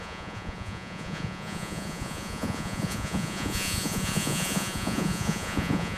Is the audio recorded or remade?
remade